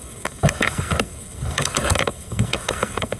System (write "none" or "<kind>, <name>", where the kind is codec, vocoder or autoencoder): codec, SNAC